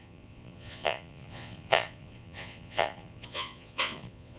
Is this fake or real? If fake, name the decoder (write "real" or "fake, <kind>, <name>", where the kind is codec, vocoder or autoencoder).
fake, vocoder, Vocos